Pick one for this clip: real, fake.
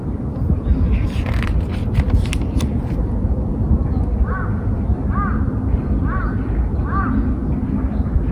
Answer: real